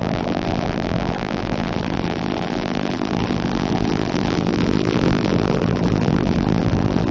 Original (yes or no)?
no